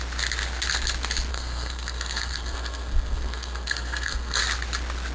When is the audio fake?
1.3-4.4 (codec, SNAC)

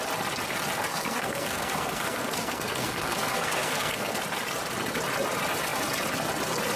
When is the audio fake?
0.9-4.2 (codec, SNAC)

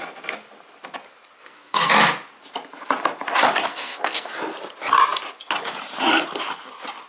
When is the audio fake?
1.4-1.9 (codec, SNAC); 3.7-4.3

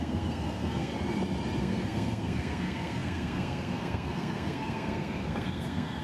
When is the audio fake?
0.0-0.9 (codec, SNAC); 1.6-6.0